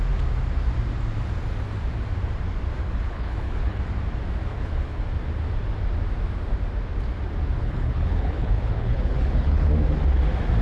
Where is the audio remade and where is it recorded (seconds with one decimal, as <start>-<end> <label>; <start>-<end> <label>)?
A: 0.0-2.8 recorded; 2.8-3.8 remade; 3.8-4.4 recorded; 4.4-5.0 remade; 5.0-7.6 recorded; 7.6-9.7 remade; 9.7-10.6 recorded

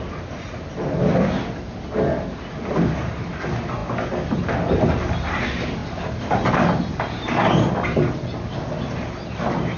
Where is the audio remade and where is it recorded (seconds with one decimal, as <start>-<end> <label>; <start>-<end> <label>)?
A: 0.0-9.8 recorded

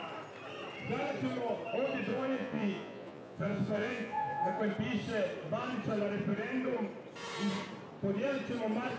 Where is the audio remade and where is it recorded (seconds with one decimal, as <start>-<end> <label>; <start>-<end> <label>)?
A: 0.0-2.1 recorded; 2.1-4.6 remade; 4.6-9.0 recorded